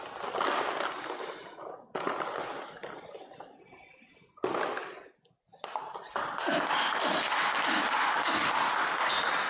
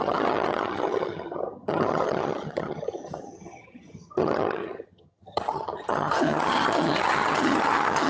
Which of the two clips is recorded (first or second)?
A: first